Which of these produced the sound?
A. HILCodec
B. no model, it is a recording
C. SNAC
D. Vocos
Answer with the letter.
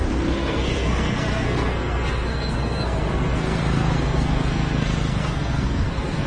C